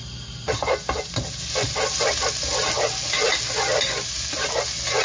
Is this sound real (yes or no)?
yes